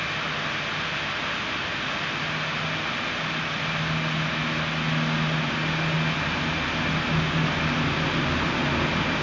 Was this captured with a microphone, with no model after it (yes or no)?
yes